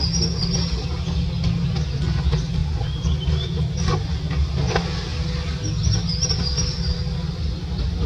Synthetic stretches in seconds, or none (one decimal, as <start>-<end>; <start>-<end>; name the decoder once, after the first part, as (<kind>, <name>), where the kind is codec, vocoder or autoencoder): none